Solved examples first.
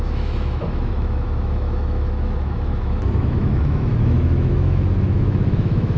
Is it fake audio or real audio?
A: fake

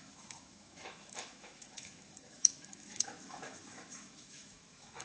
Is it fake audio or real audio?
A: fake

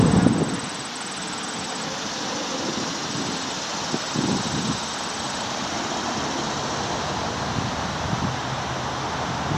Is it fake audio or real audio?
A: real